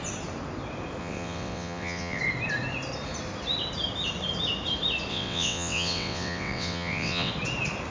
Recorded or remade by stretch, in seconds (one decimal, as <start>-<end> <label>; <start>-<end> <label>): 0.0-1.0 recorded; 1.0-2.2 remade; 2.2-5.1 recorded; 5.1-7.3 remade; 7.3-7.9 recorded

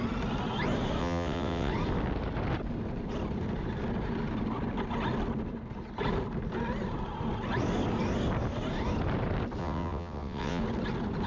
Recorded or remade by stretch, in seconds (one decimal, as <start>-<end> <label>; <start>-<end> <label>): 0.0-1.0 recorded; 1.0-1.7 remade; 1.7-9.6 recorded; 9.6-10.6 remade; 10.6-11.3 recorded

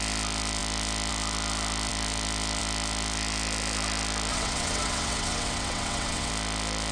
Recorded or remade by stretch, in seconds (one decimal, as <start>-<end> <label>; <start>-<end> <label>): 0.0-4.3 recorded; 4.3-6.3 remade; 6.3-6.9 recorded